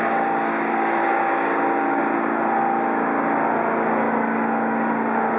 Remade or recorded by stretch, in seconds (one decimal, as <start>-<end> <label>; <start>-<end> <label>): 0.0-2.0 remade; 2.0-5.4 recorded